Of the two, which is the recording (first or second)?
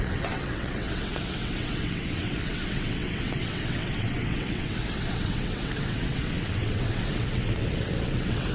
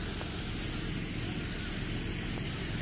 second